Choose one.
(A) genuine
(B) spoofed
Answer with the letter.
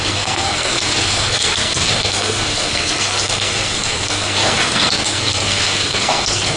B